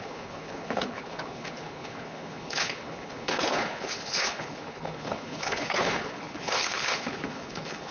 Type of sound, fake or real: fake